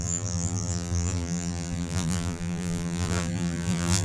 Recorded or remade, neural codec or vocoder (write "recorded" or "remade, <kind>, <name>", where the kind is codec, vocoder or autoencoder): remade, vocoder, BigVGAN v2